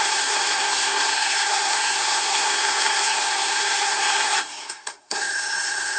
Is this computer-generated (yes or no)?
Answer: yes